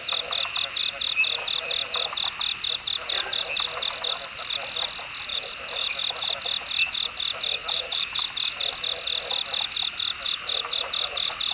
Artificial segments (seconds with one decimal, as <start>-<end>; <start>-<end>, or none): 5.3-5.9; 7.6-8.2